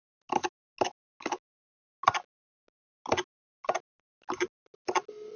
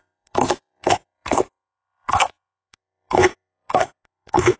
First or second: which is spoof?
second